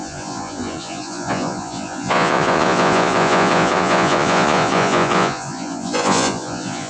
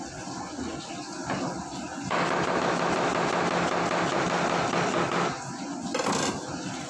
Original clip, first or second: second